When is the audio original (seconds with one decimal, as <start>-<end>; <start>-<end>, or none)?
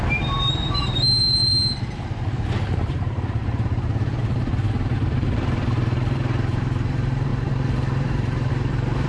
1.4-2.7